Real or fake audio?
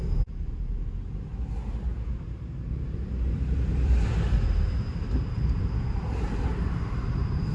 fake